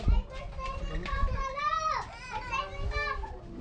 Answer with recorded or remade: recorded